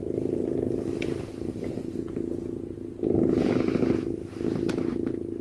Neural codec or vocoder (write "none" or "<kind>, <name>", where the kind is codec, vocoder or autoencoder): none